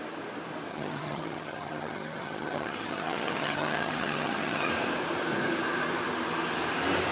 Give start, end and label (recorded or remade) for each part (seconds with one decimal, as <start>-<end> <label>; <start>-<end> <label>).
0.0-0.7 recorded; 0.7-4.7 remade; 4.7-7.1 recorded